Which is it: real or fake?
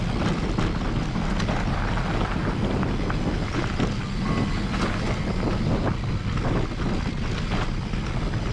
real